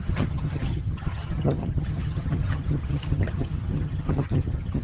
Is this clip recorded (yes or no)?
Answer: no